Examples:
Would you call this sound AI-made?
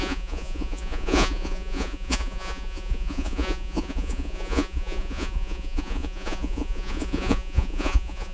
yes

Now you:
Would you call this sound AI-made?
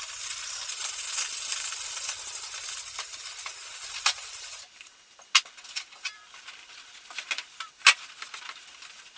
no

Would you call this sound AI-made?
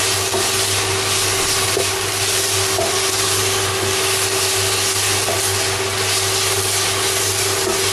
no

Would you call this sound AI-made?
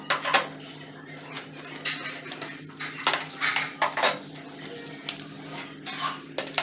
no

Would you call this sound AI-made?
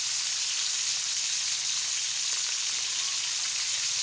no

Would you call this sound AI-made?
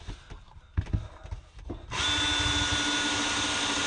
no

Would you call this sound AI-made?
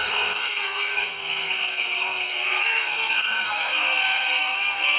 yes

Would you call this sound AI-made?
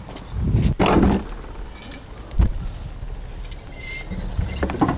no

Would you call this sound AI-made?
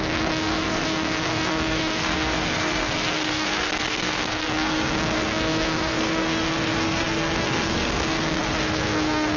yes